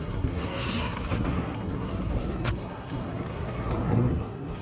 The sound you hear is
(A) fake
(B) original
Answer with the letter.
A